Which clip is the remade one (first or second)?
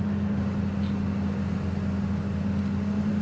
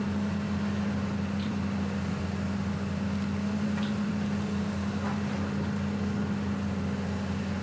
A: second